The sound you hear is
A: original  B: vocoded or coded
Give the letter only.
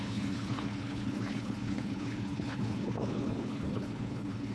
B